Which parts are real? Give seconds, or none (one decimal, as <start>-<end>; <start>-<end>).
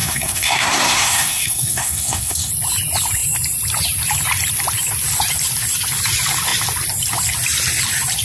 2.5-8.2